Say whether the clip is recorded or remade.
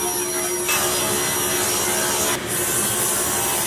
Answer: recorded